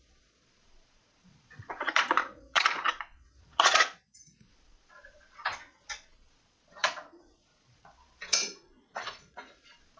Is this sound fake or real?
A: fake